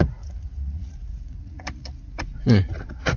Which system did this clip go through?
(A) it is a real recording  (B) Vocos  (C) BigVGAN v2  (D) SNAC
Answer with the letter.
B